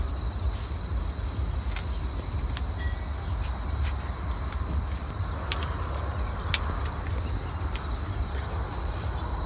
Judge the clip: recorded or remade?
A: recorded